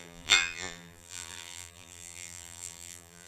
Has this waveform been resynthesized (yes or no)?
yes